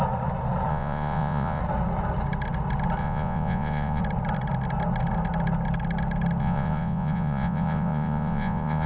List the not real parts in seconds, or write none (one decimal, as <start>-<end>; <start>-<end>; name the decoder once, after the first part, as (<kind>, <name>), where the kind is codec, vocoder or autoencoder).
0.7-1.6 (vocoder, Vocos); 3.0-4.0; 6.4-8.9